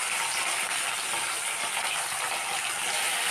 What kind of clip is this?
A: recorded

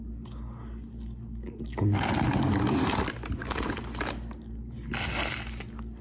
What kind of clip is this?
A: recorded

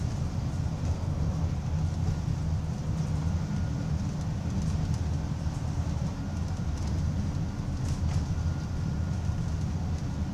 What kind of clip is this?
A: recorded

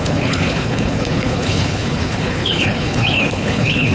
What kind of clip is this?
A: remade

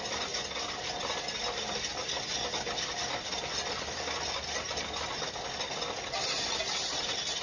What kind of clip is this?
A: recorded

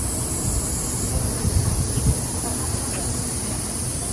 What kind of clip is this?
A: recorded